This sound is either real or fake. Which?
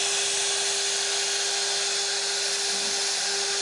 real